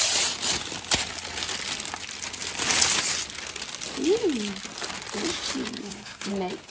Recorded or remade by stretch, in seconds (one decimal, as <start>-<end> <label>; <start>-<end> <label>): 0.0-5.8 recorded; 5.8-6.3 remade; 6.3-6.7 recorded